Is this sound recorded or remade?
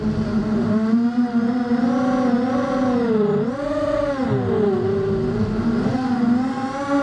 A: recorded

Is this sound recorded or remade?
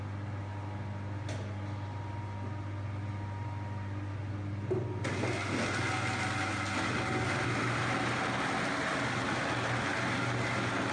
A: recorded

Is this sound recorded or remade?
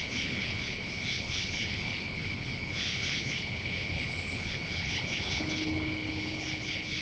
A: remade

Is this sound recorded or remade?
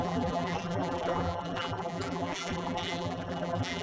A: remade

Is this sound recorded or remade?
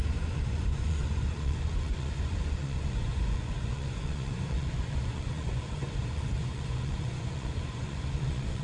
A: remade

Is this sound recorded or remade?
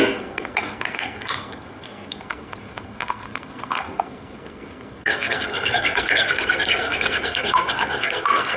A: remade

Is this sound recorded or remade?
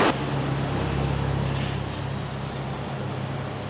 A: recorded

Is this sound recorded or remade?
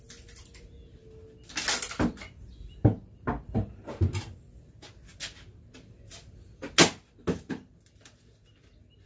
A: recorded